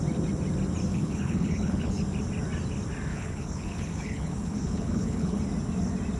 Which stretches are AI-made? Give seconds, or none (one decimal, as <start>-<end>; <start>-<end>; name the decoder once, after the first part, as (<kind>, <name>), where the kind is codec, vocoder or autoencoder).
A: 0.9-2.0 (codec, HILCodec); 3.1-5.4